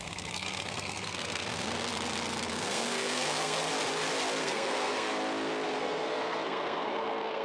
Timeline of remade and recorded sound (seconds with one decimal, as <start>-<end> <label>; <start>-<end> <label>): 0.0-1.9 remade; 1.9-2.5 recorded; 2.5-3.7 remade; 3.7-4.4 recorded; 4.4-5.1 remade; 5.1-5.8 recorded; 5.8-7.4 remade

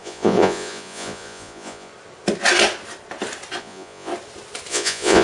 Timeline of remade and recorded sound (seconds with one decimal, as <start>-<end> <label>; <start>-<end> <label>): 0.0-1.9 remade; 1.9-3.6 recorded; 3.6-4.1 remade; 4.1-4.7 recorded; 4.7-5.2 remade

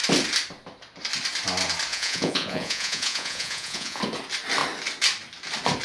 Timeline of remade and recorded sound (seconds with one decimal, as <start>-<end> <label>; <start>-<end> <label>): 0.0-1.9 recorded; 1.9-4.0 remade; 4.0-5.8 recorded

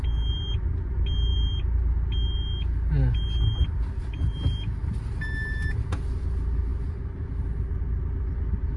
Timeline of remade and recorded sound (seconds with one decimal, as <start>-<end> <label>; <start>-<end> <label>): 0.0-8.8 recorded

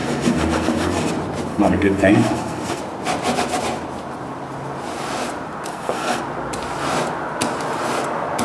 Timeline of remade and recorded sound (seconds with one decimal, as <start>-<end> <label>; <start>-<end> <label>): 0.0-1.1 remade; 1.1-1.5 recorded; 1.5-2.8 remade; 2.8-5.7 recorded; 5.7-6.2 remade; 6.2-8.4 recorded

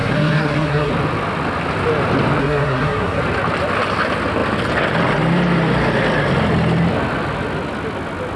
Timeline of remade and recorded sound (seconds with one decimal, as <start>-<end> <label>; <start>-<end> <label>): 0.0-0.9 remade; 0.9-2.4 recorded; 2.4-3.2 remade; 3.2-8.4 recorded

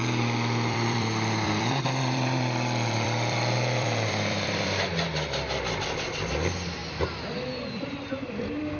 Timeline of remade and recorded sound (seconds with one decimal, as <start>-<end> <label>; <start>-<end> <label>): 0.0-4.8 remade; 4.8-8.8 recorded